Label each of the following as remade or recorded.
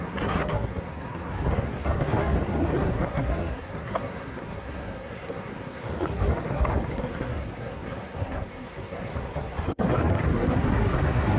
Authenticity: remade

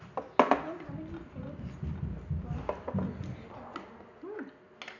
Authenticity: recorded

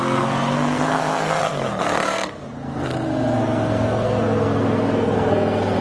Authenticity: remade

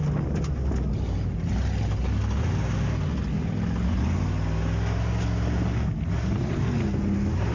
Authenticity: recorded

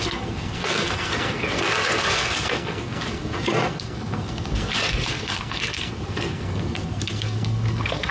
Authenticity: remade